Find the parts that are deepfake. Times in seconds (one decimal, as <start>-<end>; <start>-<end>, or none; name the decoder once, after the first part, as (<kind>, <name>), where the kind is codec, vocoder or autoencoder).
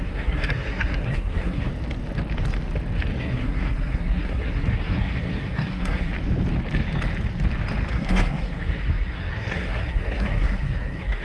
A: 0.0-1.7 (codec, SNAC); 3.2-6.1; 7.9-11.2